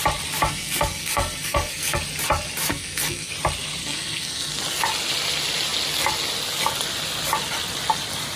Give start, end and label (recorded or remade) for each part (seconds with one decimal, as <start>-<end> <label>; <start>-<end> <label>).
0.0-0.5 recorded; 0.5-2.0 remade; 2.0-2.7 recorded; 2.7-3.3 remade; 3.3-3.8 recorded; 3.8-4.6 remade; 4.6-8.4 recorded

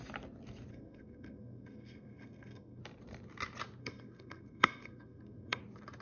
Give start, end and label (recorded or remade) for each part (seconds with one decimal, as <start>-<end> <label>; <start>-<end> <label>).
0.0-0.7 recorded; 0.7-2.8 remade; 2.8-3.8 recorded; 3.8-5.6 remade; 5.6-6.0 recorded